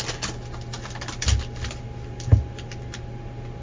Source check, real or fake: real